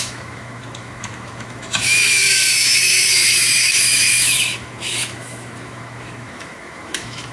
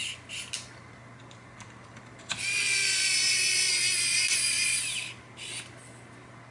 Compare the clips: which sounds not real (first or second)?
first